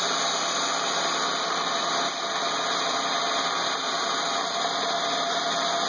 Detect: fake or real real